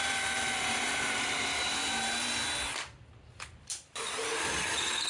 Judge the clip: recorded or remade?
remade